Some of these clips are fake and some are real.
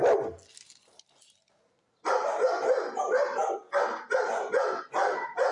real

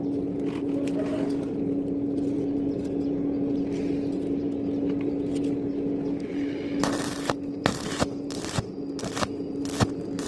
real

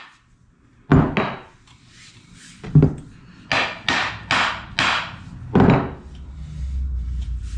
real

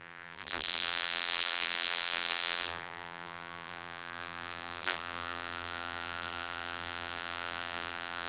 fake